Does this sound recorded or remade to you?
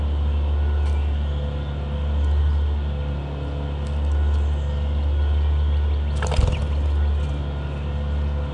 recorded